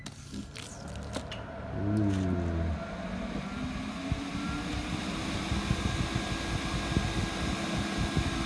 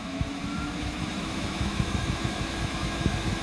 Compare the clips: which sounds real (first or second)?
first